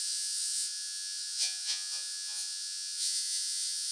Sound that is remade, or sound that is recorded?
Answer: remade